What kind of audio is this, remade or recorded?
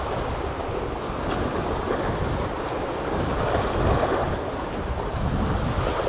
recorded